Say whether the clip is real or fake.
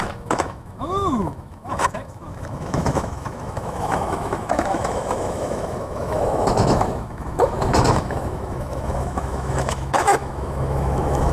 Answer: fake